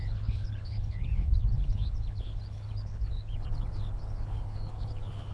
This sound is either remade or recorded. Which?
remade